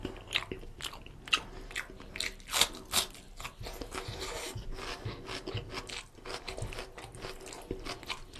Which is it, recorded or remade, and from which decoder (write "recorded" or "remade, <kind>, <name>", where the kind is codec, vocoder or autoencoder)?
recorded